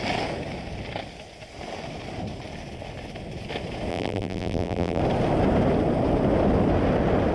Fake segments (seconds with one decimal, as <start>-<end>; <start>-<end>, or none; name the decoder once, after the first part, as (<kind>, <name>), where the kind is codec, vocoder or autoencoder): 3.9-5.0 (vocoder, BigVGAN v2)